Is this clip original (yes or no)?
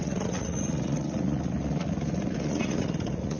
no